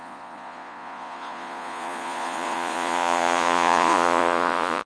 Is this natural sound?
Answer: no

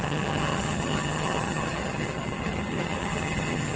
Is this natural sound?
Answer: no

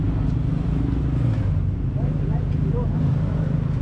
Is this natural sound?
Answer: yes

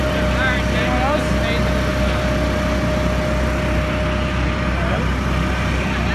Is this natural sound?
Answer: yes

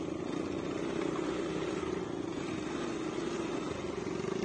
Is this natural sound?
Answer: yes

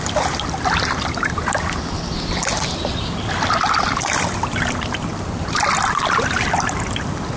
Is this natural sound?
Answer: no